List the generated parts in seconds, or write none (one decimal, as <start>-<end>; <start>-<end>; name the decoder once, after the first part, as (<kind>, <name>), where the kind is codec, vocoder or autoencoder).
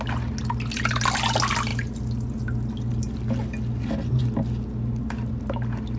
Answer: none